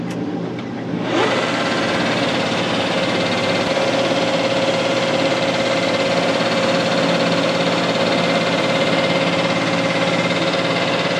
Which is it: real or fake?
real